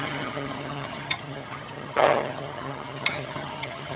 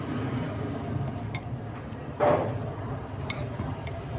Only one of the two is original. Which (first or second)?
second